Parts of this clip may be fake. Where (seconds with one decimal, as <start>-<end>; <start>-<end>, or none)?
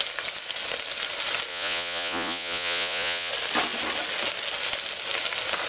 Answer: 1.5-3.3